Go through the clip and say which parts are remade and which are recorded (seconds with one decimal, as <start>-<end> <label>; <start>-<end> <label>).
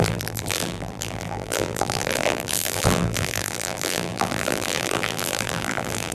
0.0-6.1 remade